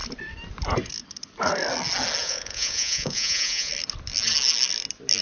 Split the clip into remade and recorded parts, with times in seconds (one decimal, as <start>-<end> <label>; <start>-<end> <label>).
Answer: 0.0-2.2 recorded; 2.2-3.7 remade; 3.7-5.2 recorded